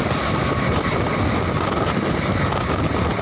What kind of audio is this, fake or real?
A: real